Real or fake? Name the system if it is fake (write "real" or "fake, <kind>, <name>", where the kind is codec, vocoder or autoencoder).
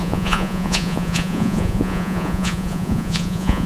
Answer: fake, vocoder, Vocos